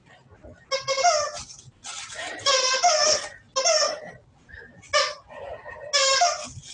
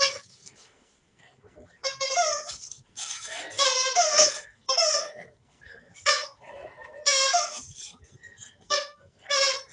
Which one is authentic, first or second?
first